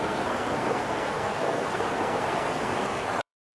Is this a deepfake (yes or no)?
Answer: yes